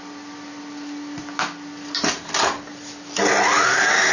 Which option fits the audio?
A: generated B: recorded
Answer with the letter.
B